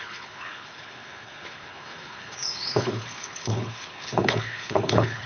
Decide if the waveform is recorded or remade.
remade